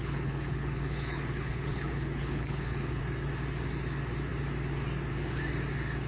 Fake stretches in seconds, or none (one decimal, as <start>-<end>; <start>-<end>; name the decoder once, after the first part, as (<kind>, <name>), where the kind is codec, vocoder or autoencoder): 0.0-3.0 (codec, HILCodec)